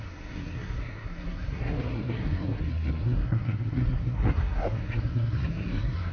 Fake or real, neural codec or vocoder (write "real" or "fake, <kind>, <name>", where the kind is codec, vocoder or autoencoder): fake, codec, SNAC